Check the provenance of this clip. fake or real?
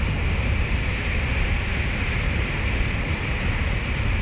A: real